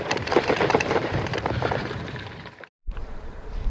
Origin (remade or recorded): remade